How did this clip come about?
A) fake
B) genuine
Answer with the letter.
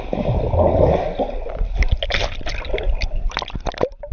B